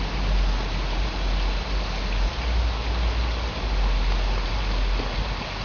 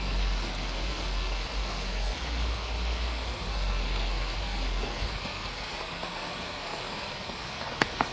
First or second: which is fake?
second